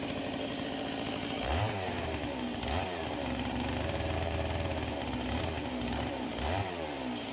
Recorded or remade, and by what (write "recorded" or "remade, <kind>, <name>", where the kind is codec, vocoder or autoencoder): remade, vocoder, BigVGAN v2